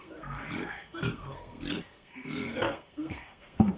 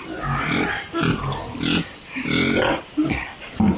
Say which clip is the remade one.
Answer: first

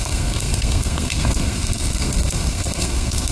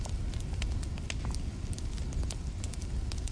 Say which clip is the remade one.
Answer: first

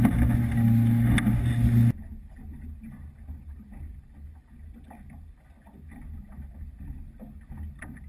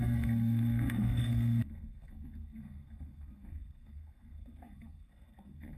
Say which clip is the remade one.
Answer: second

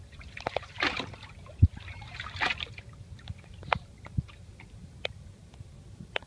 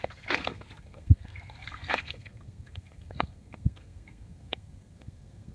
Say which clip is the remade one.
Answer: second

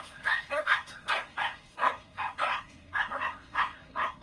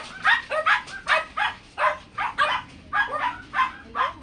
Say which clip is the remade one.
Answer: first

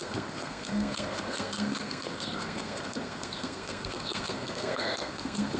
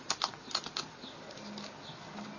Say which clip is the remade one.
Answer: first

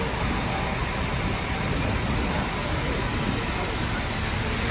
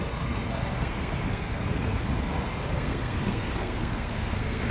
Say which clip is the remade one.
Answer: second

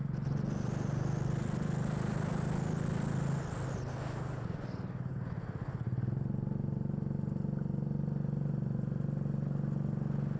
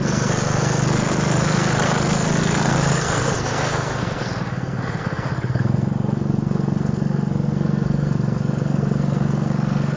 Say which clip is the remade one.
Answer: second